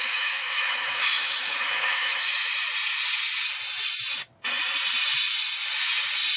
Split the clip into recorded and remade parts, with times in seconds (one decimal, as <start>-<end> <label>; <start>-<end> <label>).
0.0-2.3 remade; 2.3-6.4 recorded